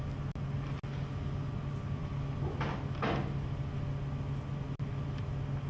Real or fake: real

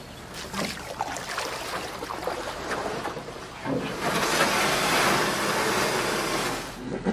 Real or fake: real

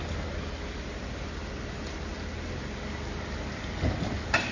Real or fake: real